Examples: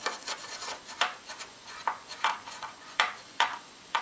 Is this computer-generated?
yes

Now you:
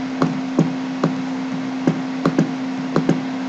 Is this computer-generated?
no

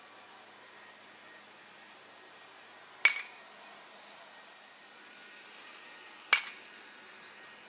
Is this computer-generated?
no